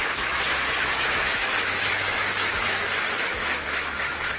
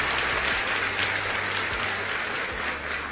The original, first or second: second